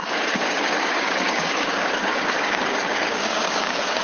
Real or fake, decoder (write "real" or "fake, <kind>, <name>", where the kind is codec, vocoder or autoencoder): fake, codec, DAC